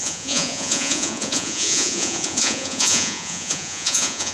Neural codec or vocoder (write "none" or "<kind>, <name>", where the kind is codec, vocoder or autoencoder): vocoder, Vocos